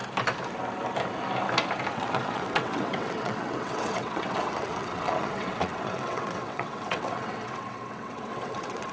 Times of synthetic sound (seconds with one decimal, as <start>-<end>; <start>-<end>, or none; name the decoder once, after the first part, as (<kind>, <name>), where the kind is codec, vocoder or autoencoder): 1.9-8.9 (vocoder, WaveNeXt)